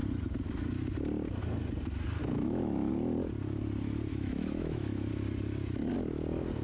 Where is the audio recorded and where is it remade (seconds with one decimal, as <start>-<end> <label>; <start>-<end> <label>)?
0.0-2.2 recorded; 2.2-2.9 remade; 2.9-4.1 recorded; 4.1-5.1 remade; 5.1-6.6 recorded